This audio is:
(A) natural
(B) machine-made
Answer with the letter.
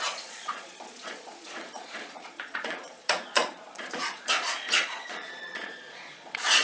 B